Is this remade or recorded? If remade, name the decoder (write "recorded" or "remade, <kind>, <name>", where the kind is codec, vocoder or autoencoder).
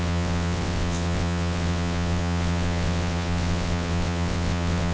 remade, vocoder, WaveNeXt